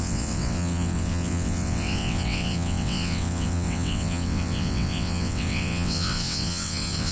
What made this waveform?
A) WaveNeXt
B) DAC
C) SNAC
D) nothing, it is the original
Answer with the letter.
A